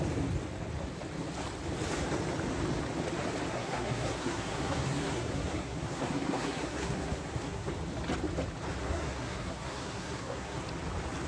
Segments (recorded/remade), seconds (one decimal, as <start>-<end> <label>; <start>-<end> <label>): 0.0-3.5 recorded; 3.5-7.7 remade; 7.7-8.8 recorded; 8.8-10.6 remade; 10.6-11.3 recorded